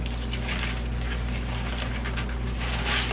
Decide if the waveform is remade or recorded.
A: recorded